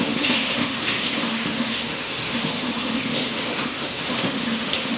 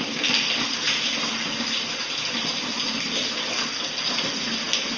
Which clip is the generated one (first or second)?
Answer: first